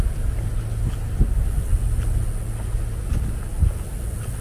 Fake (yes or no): no